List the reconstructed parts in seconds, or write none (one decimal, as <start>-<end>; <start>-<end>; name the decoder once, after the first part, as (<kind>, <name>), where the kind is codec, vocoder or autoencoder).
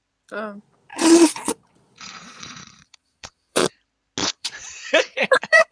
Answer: 0.9-3.7 (vocoder, Vocos); 4.2-5.7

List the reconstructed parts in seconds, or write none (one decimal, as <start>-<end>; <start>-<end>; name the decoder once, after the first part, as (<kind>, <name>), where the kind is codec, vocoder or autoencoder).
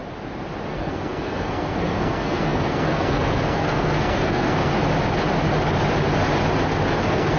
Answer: 0.7-4.7 (codec, SNAC); 7.0-7.4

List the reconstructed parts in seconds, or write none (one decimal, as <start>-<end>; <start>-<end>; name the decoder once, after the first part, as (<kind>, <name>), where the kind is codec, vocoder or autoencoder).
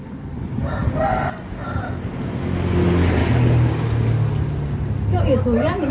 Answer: none